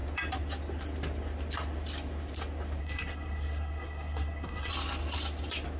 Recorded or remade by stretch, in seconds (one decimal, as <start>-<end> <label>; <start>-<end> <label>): 0.0-2.8 recorded; 2.8-4.7 remade; 4.7-5.8 recorded